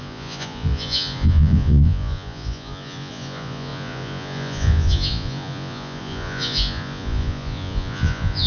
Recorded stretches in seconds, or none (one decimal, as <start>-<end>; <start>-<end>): none